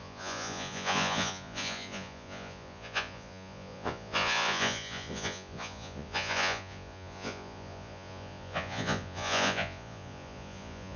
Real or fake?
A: fake